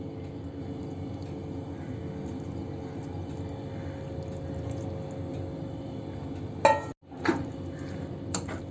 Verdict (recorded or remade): recorded